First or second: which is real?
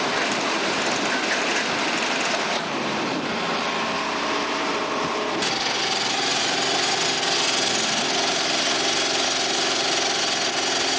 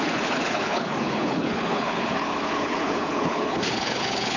first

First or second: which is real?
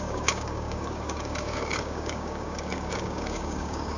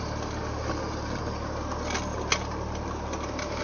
second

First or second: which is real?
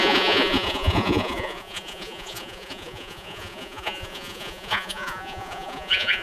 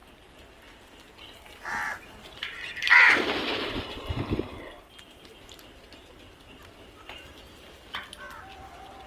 second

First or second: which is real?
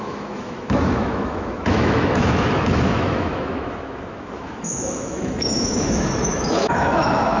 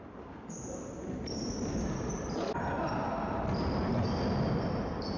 second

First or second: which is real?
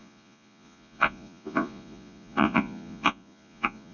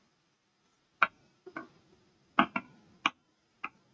second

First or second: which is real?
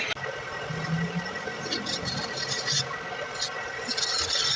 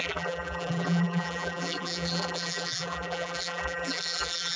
first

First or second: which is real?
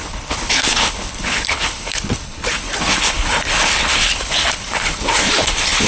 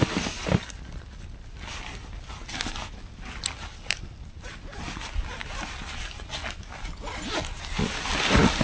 second